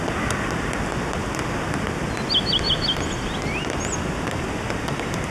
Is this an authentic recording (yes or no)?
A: yes